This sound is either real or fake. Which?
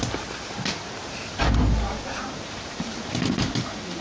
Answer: real